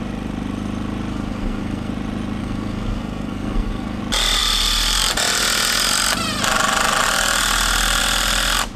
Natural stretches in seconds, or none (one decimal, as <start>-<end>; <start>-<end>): 0.0-1.1; 1.9-2.4; 4.0-8.8